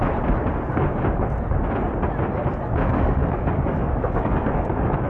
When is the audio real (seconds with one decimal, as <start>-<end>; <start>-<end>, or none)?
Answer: 0.0-2.9